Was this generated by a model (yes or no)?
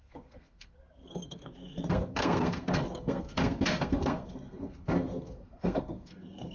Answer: yes